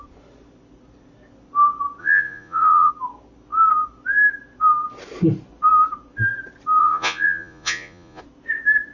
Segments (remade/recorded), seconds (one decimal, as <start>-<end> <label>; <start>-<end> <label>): 0.0-2.0 recorded; 2.0-2.9 remade; 2.9-6.8 recorded; 6.8-8.2 remade; 8.2-8.9 recorded

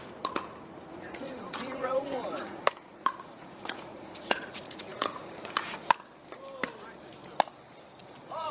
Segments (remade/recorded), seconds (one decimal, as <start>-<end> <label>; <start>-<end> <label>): 0.0-0.9 recorded; 0.9-5.9 remade; 5.9-8.0 recorded; 8.0-8.5 remade

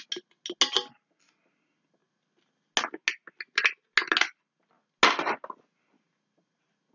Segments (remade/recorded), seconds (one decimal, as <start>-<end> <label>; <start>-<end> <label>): 0.0-6.9 recorded